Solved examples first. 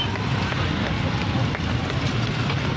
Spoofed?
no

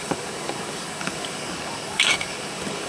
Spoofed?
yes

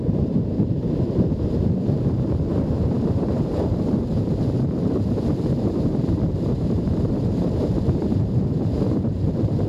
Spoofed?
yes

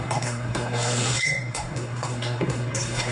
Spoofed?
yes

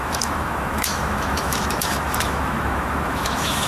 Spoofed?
yes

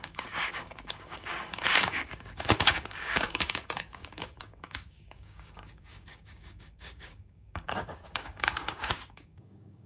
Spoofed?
yes